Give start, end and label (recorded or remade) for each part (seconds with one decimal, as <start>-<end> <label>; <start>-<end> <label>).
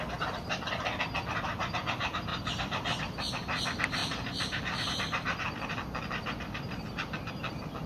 0.0-2.3 recorded; 2.3-3.0 remade; 3.0-4.0 recorded; 4.0-4.9 remade; 4.9-7.9 recorded